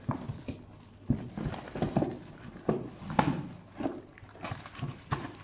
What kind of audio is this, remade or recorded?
recorded